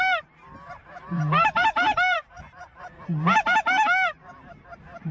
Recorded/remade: remade